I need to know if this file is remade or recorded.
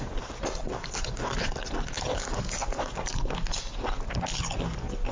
recorded